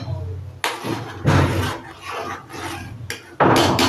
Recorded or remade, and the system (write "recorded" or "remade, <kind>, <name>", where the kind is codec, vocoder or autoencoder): recorded